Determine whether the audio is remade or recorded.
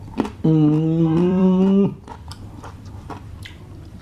remade